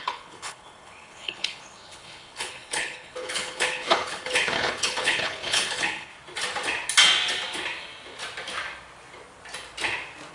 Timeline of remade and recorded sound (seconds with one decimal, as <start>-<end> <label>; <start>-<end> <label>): 0.0-6.1 remade; 6.1-10.3 recorded